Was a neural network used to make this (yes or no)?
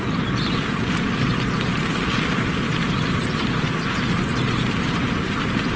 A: yes